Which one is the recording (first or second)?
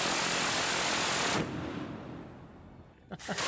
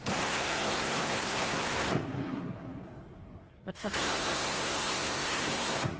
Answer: first